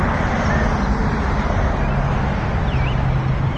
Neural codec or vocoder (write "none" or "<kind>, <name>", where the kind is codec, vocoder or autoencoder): none